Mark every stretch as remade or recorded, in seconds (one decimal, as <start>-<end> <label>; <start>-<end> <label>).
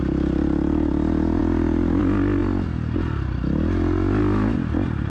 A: 0.0-5.1 recorded